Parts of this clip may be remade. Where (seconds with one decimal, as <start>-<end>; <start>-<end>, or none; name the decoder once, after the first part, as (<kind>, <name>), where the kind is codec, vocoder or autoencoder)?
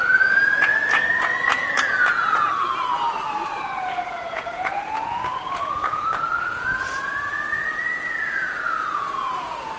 0.0-9.8 (vocoder, Vocos)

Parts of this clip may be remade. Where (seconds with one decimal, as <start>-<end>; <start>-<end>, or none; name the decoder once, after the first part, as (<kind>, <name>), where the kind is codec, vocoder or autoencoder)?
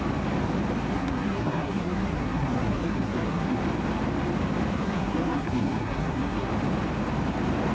0.9-3.6 (codec, SNAC); 4.7-6.5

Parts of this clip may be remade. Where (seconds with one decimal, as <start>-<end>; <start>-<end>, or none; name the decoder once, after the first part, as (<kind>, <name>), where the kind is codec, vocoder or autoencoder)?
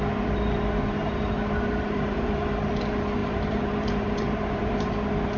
1.0-2.7 (vocoder, BigVGAN v2); 3.2-5.0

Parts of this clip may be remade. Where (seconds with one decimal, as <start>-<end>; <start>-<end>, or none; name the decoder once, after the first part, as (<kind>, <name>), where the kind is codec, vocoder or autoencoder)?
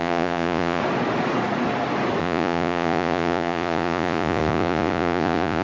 0.0-0.8 (vocoder, Vocos); 2.2-5.6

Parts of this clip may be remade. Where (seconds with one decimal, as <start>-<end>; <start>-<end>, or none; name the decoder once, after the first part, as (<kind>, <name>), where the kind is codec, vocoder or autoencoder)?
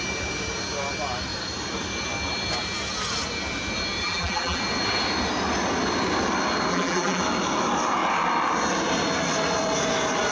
4.0-4.6 (vocoder, BigVGAN v2); 6.7-7.2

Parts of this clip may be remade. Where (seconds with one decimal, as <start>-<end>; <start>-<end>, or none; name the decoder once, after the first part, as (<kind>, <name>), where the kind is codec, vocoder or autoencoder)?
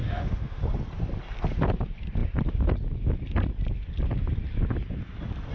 0.0-0.6 (autoencoder, DAC-VAE)